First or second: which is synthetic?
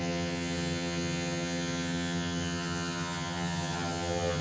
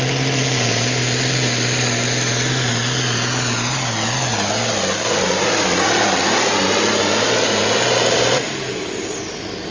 first